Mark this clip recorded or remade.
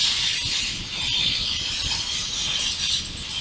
recorded